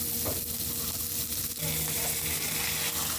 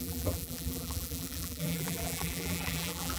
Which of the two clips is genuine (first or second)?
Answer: first